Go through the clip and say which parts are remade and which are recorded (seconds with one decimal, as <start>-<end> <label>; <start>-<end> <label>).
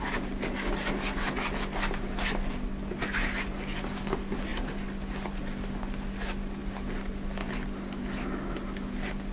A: 0.0-9.3 recorded